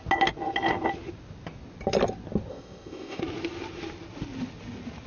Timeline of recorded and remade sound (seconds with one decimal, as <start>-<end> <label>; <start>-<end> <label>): 0.0-2.5 recorded; 2.5-3.2 remade; 3.2-5.1 recorded